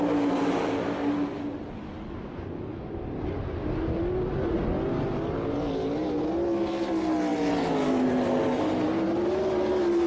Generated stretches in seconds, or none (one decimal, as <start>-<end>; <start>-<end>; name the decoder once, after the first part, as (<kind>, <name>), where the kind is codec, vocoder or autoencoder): none